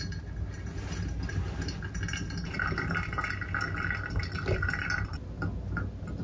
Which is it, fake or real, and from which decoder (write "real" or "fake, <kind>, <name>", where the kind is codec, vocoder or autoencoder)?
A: real